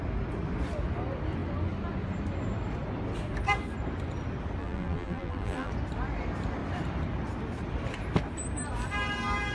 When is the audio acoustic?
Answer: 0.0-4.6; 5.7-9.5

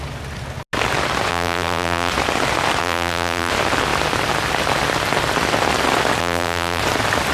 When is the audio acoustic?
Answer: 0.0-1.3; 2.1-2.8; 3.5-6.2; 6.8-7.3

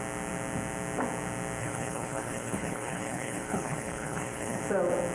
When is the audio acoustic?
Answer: 0.0-1.6; 4.6-5.1

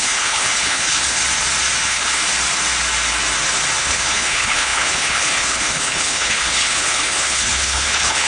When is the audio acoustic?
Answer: 1.2-1.8; 2.2-3.8